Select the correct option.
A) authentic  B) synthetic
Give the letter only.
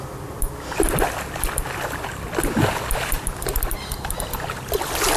A